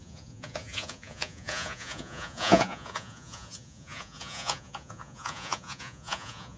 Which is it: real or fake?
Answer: fake